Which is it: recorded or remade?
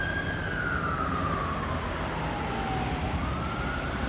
recorded